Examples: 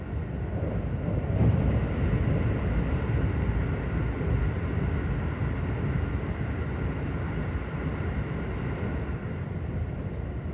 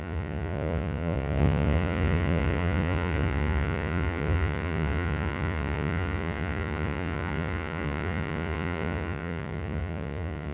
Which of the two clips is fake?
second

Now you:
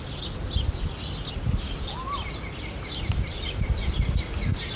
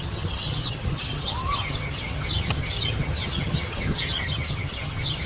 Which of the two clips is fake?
second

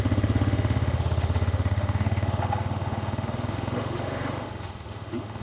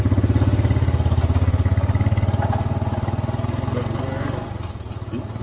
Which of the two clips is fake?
first